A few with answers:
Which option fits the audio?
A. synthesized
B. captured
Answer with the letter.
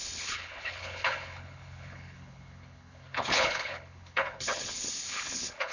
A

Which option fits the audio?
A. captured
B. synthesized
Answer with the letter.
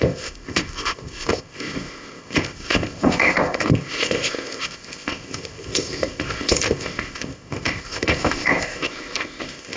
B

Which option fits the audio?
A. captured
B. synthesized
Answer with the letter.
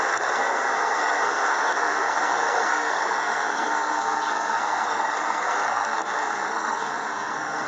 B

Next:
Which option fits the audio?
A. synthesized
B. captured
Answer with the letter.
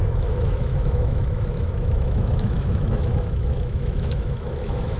A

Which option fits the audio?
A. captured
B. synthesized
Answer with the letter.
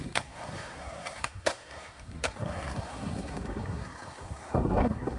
B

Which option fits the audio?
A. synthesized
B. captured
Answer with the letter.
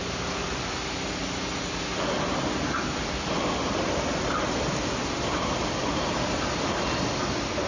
B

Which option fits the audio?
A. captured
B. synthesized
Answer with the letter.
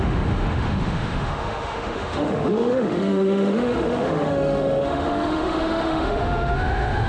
B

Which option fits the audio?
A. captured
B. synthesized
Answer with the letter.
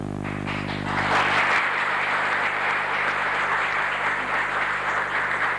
A